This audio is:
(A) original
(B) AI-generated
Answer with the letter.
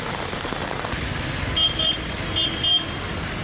A